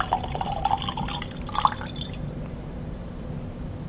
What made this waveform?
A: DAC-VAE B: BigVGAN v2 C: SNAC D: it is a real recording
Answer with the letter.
D